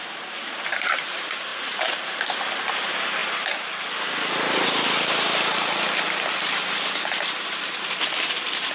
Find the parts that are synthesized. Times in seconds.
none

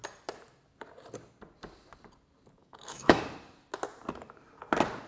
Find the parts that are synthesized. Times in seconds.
2.6-3.2